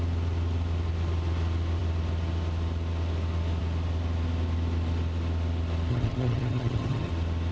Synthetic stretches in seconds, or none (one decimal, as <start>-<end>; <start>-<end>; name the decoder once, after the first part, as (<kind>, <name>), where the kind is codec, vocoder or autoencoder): 5.9-7.1 (vocoder, HiFi-GAN)